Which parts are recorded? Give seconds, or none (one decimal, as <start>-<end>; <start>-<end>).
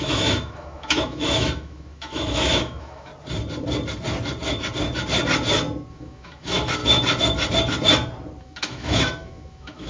3.1-5.9; 6.8-8.4